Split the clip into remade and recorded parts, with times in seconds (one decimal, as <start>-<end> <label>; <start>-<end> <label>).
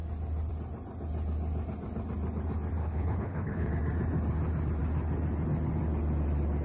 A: 0.0-2.8 recorded; 2.8-3.7 remade; 3.7-6.6 recorded